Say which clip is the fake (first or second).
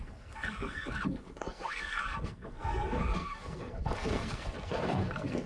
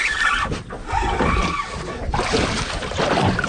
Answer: first